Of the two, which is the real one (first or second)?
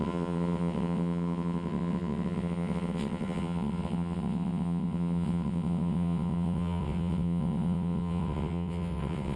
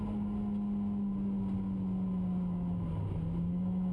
second